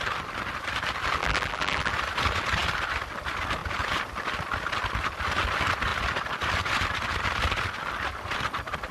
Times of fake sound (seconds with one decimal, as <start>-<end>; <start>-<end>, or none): 1.2-1.9